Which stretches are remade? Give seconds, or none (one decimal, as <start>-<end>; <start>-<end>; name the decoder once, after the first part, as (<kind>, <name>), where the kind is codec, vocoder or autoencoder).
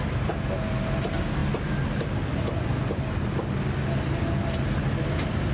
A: none